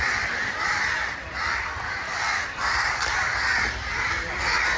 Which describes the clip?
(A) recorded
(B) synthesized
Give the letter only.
B